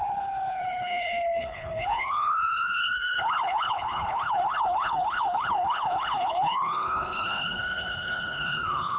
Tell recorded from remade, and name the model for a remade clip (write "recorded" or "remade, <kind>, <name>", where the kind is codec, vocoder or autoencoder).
remade, codec, HILCodec